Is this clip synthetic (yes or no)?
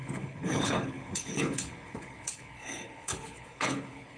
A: yes